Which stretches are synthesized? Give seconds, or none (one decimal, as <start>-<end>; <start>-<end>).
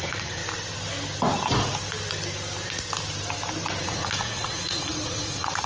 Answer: 0.0-0.4; 3.8-5.7